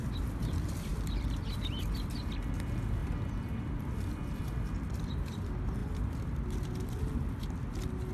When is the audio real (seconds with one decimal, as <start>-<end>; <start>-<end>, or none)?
0.0-0.9; 2.2-3.0; 4.4-5.8; 7.0-8.1